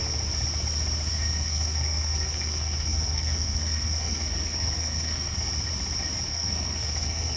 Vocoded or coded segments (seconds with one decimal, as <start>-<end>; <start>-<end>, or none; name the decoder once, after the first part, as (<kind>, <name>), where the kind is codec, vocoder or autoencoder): 1.1-5.5 (codec, SNAC); 6.3-7.4